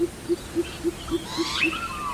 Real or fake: real